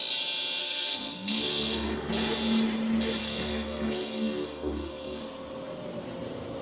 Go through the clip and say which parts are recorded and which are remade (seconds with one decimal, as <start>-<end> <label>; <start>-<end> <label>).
0.0-0.6 recorded; 0.6-2.1 remade; 2.1-3.2 recorded; 3.2-5.2 remade; 5.2-6.6 recorded